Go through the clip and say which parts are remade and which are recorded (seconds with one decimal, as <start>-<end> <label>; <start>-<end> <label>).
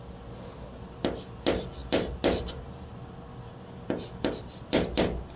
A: 0.0-5.4 recorded